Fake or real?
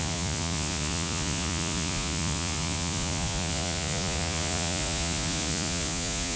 fake